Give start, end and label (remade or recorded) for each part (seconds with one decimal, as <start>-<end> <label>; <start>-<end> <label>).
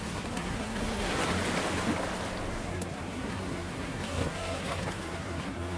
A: 0.0-1.3 remade; 1.3-2.5 recorded; 2.5-5.8 remade